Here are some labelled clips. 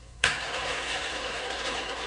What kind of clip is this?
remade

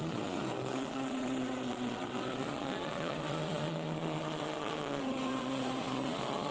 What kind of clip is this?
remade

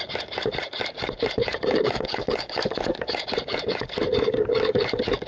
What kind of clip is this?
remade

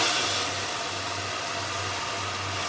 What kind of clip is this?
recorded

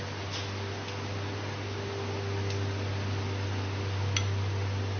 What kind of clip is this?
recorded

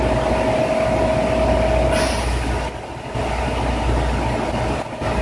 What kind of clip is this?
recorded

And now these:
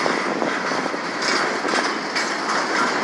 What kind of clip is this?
recorded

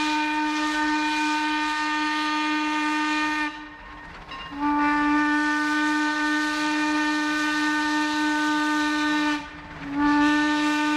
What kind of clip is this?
recorded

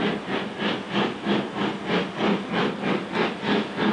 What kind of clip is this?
recorded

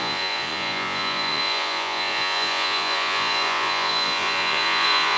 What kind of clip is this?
remade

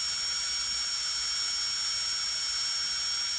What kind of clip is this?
recorded